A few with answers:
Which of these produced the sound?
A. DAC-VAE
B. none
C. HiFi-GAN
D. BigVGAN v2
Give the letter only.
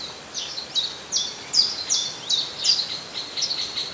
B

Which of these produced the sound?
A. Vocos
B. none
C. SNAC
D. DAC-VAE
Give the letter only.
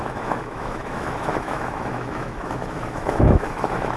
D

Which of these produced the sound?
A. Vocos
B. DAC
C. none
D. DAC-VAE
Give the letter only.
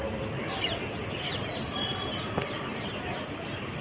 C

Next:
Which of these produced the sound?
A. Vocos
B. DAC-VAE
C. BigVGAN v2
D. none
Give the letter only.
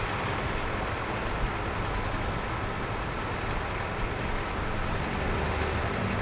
D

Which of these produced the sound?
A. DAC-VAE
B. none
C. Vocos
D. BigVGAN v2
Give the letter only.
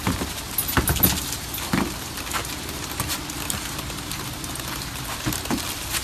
B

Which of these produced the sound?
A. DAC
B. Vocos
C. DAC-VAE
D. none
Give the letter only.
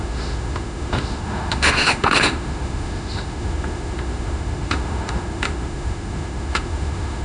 C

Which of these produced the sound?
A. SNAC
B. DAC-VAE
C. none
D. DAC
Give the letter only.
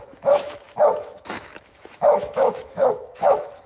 B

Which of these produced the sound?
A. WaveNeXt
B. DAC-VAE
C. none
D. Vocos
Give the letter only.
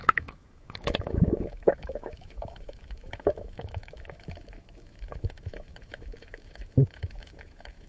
B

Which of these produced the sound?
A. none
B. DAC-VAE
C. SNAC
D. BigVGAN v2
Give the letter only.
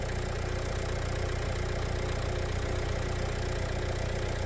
A